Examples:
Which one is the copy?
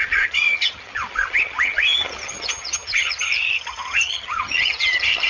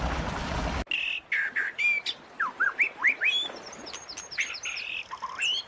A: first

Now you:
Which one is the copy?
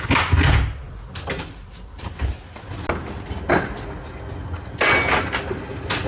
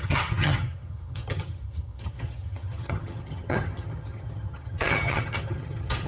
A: second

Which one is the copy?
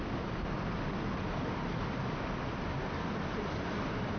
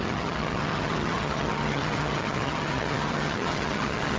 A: second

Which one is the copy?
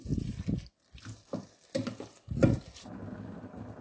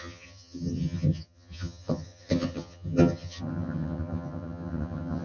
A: second